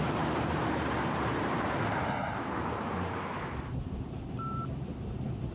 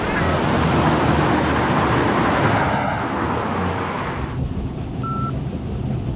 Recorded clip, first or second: second